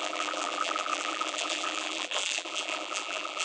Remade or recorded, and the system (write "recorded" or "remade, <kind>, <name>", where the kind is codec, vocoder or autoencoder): remade, vocoder, BigVGAN v2